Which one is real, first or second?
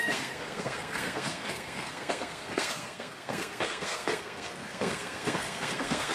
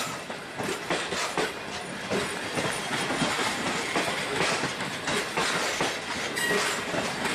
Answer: second